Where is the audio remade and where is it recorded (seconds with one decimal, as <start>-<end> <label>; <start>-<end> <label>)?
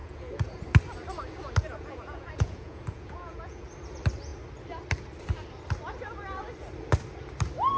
0.0-0.6 remade; 0.6-1.6 recorded; 1.6-3.7 remade; 3.7-7.8 recorded